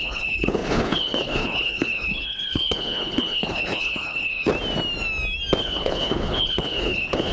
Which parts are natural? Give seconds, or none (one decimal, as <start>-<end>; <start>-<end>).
4.5-5.6